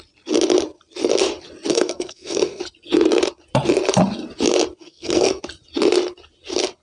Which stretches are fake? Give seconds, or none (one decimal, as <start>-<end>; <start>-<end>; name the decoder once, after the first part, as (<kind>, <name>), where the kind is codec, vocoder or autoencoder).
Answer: 1.7-2.6 (codec, SNAC); 4.8-5.4